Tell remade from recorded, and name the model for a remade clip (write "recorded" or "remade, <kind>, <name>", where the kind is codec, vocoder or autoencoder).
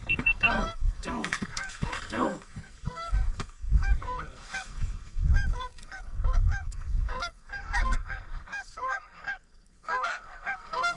remade, codec, SNAC